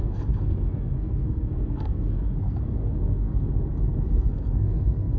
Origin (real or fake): fake